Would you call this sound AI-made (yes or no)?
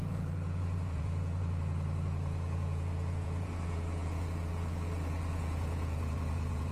yes